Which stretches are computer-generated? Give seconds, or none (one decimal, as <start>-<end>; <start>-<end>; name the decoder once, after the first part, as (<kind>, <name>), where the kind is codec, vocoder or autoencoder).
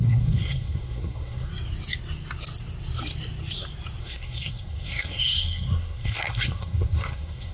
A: 0.0-1.5 (codec, SNAC); 4.0-7.5